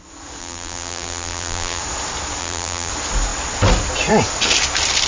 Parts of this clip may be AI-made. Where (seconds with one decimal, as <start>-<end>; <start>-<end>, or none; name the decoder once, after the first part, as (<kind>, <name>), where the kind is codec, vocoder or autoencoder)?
0.4-1.8 (vocoder, BigVGAN v2); 2.4-2.9